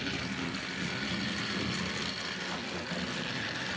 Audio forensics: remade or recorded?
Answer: recorded